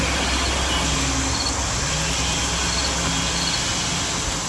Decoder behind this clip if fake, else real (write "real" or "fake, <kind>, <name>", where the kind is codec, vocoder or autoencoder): real